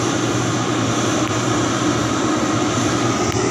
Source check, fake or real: real